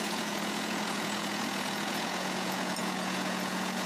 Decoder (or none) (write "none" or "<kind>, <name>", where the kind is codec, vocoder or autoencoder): vocoder, Vocos